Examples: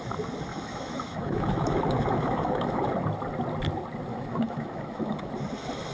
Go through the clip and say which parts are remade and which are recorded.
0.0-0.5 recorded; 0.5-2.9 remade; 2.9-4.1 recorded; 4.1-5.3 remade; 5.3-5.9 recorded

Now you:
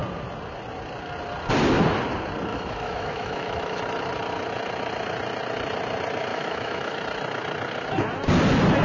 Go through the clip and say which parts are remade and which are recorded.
0.0-2.5 recorded; 2.5-3.8 remade; 3.8-6.3 recorded; 6.3-7.0 remade; 7.0-8.8 recorded

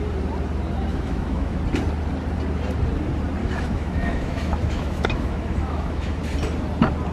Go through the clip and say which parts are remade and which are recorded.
0.0-0.9 recorded; 0.9-1.6 remade; 1.6-3.4 recorded; 3.4-6.2 remade; 6.2-7.1 recorded

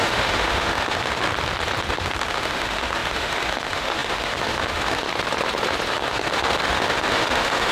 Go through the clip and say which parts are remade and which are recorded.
0.0-1.3 remade; 1.3-1.9 recorded; 1.9-5.1 remade; 5.1-5.9 recorded; 5.9-7.7 remade

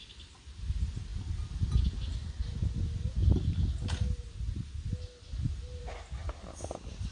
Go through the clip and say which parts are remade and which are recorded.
0.0-7.1 recorded

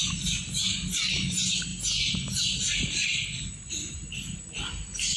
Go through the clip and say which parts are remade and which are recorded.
0.0-5.2 recorded